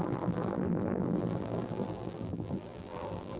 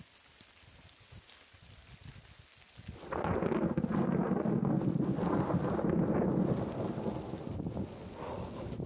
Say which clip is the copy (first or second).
first